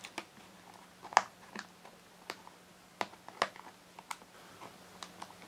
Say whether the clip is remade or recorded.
recorded